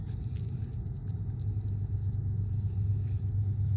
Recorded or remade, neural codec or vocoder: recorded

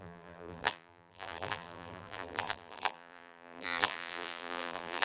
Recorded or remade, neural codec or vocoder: remade, vocoder, BigVGAN v2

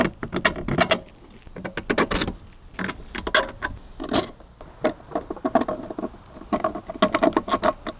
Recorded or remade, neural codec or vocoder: recorded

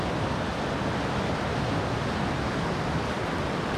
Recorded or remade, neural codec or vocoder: recorded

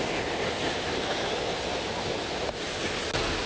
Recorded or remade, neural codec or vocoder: recorded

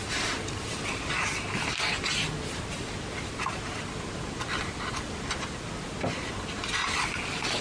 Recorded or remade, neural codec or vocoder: recorded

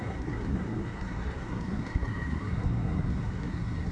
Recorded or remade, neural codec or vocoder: remade, codec, SNAC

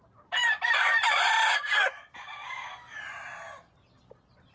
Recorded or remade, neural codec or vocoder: recorded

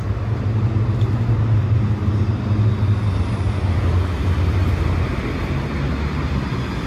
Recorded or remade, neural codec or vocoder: recorded